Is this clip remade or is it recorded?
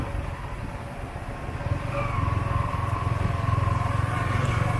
recorded